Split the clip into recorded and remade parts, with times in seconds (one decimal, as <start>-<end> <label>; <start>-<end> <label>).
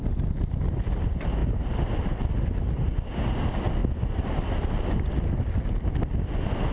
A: 0.0-1.4 recorded; 1.4-2.3 remade; 2.3-3.8 recorded; 3.8-5.1 remade; 5.1-6.7 recorded